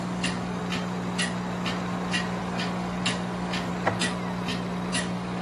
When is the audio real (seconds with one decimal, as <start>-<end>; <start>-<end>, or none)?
0.6-2.4; 3.7-4.9